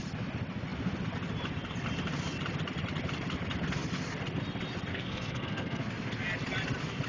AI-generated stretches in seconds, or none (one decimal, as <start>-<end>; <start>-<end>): 4.9-5.9